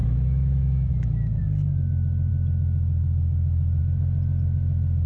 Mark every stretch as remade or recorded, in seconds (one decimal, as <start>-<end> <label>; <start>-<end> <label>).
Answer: 0.0-1.4 remade; 1.4-5.1 recorded